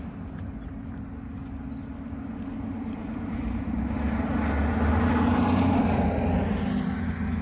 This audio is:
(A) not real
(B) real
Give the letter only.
B